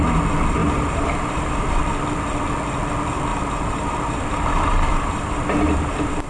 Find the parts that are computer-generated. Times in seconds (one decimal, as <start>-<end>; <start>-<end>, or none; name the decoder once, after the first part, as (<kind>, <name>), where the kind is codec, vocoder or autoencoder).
0.6-1.8 (vocoder, BigVGAN v2); 3.3-6.3